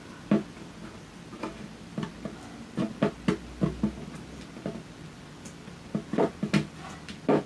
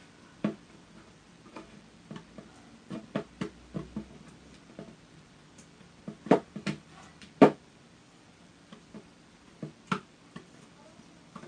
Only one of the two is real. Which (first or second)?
first